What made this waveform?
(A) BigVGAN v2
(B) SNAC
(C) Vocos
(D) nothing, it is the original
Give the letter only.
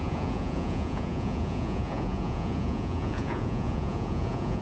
C